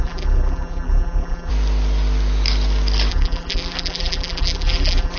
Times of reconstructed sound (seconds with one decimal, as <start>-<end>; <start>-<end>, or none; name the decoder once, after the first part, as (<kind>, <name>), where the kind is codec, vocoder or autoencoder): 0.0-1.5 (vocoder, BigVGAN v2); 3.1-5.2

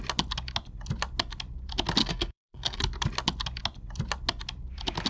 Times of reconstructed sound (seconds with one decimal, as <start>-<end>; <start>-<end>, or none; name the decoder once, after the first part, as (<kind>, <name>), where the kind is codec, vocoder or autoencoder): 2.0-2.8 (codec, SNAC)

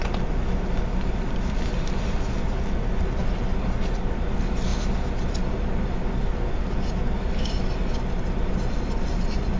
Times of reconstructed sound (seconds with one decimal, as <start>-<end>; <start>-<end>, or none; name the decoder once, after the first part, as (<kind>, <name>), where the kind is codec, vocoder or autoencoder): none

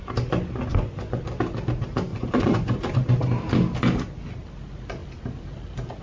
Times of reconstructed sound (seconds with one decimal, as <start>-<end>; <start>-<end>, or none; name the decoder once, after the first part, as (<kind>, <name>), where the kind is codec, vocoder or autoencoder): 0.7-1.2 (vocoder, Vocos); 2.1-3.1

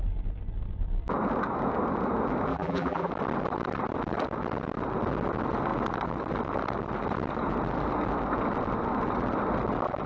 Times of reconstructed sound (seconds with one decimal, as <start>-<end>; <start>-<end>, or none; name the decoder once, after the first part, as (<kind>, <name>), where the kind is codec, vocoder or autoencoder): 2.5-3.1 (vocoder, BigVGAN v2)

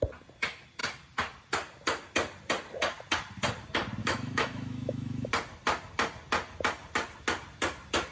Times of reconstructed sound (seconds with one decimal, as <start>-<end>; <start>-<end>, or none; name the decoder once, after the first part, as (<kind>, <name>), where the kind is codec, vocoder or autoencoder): 4.0-5.3 (autoencoder, DAC-VAE)